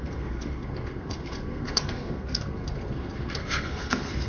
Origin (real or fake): fake